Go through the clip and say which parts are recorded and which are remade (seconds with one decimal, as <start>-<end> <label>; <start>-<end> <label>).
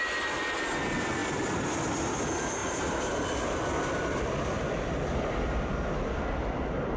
0.0-7.0 recorded